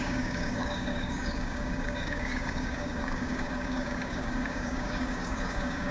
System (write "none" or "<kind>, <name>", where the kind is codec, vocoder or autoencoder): codec, DAC